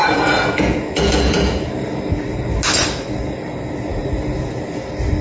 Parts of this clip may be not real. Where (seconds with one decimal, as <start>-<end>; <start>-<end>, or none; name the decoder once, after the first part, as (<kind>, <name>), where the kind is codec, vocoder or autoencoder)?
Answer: 0.0-1.7 (vocoder, Vocos)